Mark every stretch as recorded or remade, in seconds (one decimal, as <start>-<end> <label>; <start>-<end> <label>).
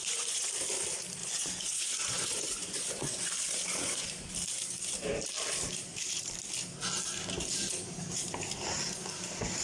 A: 0.0-0.5 remade; 0.5-1.2 recorded; 1.2-4.3 remade; 4.3-9.6 recorded